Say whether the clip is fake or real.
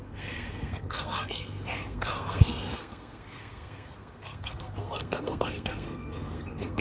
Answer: fake